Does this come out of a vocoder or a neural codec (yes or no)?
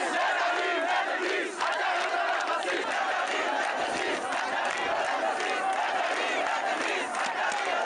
no